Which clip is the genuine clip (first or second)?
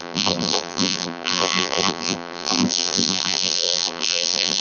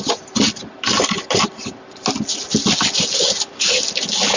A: second